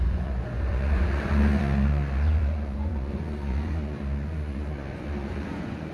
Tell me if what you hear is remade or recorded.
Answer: remade